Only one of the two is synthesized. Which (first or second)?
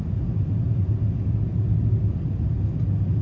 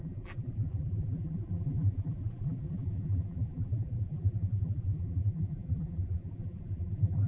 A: second